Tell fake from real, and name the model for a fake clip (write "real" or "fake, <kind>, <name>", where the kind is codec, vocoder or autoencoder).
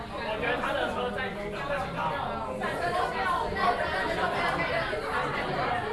real